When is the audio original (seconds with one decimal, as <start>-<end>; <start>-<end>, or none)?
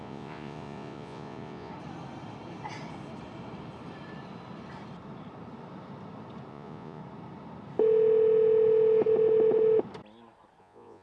1.7-6.5; 7.0-10.6